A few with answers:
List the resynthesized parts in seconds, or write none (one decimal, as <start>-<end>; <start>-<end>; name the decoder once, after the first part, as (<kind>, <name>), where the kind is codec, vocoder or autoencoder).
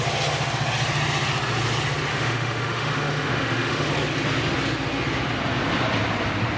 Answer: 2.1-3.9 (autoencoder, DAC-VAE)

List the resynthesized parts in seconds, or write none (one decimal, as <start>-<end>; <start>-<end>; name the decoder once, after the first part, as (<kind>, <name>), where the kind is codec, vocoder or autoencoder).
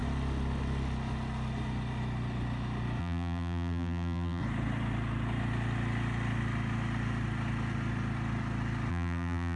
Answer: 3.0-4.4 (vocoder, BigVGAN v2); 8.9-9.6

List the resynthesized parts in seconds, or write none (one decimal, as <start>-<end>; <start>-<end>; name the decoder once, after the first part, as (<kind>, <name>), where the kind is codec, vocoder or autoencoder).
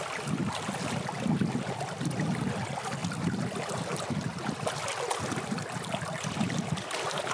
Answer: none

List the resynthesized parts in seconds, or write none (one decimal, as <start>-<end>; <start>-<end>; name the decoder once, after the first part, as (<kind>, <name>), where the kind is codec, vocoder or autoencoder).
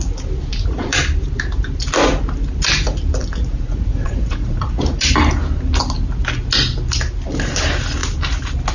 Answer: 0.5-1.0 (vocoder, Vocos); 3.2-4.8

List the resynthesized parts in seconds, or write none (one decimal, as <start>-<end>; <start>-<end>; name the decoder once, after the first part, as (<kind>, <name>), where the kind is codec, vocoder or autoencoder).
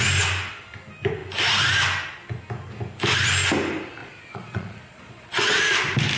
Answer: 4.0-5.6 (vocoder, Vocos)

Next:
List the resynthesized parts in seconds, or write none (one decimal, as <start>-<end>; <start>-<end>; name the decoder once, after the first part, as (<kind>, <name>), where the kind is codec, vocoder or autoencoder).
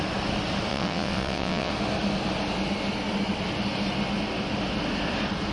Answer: 0.7-1.7 (vocoder, WaveNeXt)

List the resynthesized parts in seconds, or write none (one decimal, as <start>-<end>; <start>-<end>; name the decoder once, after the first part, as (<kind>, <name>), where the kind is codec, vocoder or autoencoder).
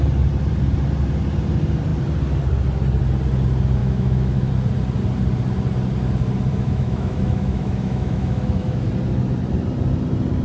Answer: 3.8-4.5 (autoencoder, DAC-VAE); 6.5-8.9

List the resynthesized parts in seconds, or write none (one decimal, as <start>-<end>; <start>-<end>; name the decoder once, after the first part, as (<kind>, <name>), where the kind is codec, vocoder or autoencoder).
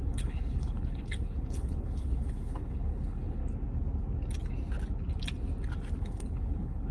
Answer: 0.0-3.4 (codec, HILCodec); 6.0-6.9